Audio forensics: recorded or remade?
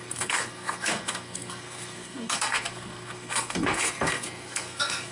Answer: remade